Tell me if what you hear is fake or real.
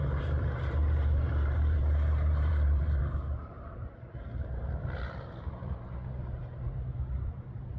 fake